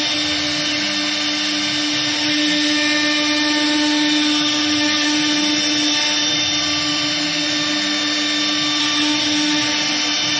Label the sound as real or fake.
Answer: real